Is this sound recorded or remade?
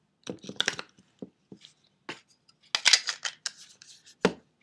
recorded